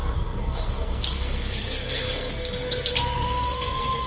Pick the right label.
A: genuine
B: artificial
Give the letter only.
B